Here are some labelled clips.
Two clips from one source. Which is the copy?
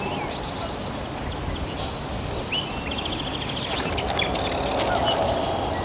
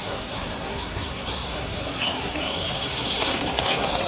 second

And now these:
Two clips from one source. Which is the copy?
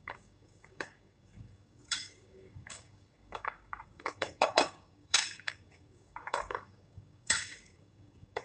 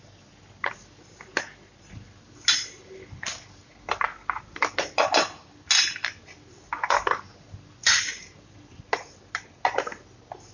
first